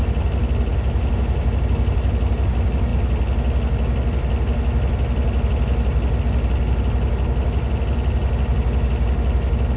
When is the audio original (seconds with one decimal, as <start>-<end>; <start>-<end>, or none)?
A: 0.0-9.8